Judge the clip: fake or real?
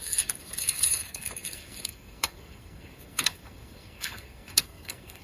fake